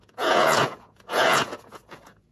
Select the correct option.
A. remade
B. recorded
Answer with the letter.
A